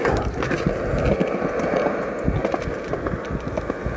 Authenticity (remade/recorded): recorded